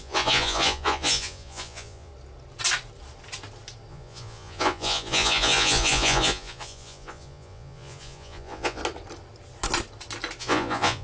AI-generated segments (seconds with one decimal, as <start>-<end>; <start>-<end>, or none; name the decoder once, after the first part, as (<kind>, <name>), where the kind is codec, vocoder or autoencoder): 0.0-2.1 (vocoder, Vocos); 3.9-8.8; 10.4-11.0